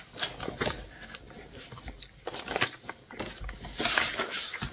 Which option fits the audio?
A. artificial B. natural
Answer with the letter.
B